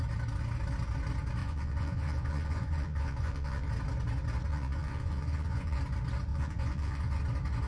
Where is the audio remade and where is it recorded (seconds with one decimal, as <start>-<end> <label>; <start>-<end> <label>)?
0.0-1.4 recorded; 1.4-3.7 remade; 3.7-4.5 recorded; 4.5-5.8 remade; 5.8-6.3 recorded; 6.3-7.2 remade; 7.2-7.7 recorded